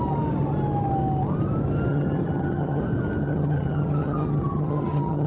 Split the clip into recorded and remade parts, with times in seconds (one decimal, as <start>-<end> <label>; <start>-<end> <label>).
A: 0.0-1.9 recorded; 1.9-2.8 remade; 2.8-3.2 recorded; 3.2-5.3 remade